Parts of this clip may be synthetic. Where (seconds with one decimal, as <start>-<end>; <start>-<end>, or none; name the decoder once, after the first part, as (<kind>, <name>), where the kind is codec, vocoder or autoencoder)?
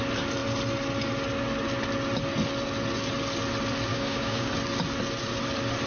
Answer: 3.9-4.5 (codec, DAC)